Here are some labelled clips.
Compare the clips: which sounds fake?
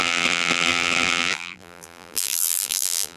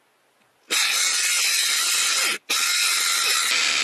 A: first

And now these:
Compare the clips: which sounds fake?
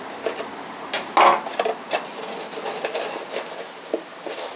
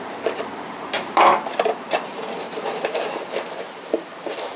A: second